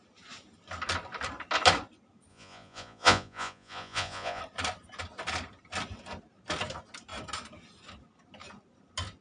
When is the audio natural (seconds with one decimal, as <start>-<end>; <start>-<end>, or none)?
0.0-2.3; 4.4-9.2